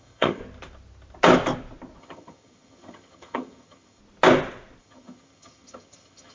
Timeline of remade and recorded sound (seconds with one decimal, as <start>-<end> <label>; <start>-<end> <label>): 0.0-0.4 remade; 0.4-2.0 recorded; 2.0-4.0 remade; 4.0-4.8 recorded; 4.8-6.3 remade